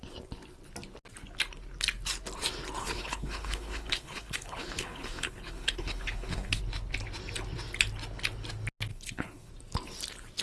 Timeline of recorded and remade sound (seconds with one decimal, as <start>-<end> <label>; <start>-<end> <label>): 0.0-2.8 recorded; 2.8-6.6 remade; 6.6-8.9 recorded; 8.9-9.5 remade; 9.5-10.4 recorded